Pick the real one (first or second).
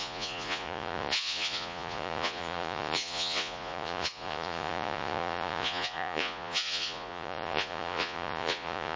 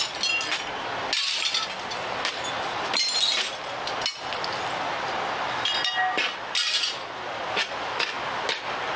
second